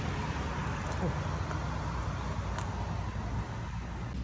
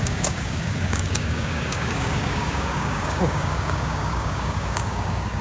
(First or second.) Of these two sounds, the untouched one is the first